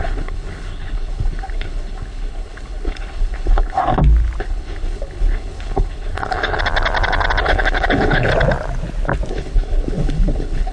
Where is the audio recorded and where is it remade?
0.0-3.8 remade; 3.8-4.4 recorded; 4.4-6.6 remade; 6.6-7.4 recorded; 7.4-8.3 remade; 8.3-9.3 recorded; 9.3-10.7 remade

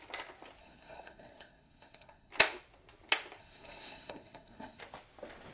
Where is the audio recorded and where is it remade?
0.0-0.6 recorded; 0.6-2.3 remade; 2.3-3.4 recorded; 3.4-4.8 remade; 4.8-5.5 recorded

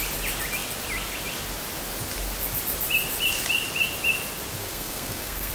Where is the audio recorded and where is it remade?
0.0-4.6 recorded; 4.6-5.5 remade

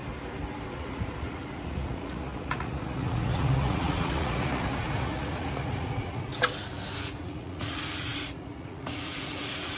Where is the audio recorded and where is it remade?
0.0-0.7 recorded; 0.7-6.3 remade; 6.3-7.0 recorded; 7.0-9.8 remade

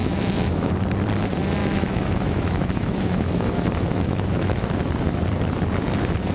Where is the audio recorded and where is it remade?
0.0-0.7 remade; 0.7-1.6 recorded; 1.6-4.8 remade; 4.8-6.3 recorded

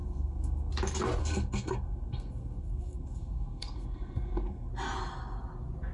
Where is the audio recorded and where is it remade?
0.0-0.7 remade; 0.7-1.2 recorded; 1.2-4.7 remade; 4.7-5.9 recorded